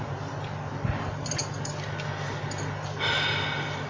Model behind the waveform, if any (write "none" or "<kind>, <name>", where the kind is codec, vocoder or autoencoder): none